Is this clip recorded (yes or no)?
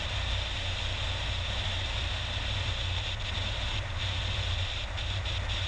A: yes